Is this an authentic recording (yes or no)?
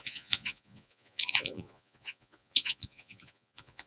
no